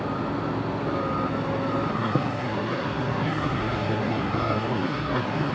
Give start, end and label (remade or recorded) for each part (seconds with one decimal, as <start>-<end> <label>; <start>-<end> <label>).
0.0-1.9 recorded; 1.9-5.5 remade